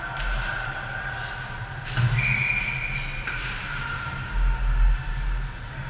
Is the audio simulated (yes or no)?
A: no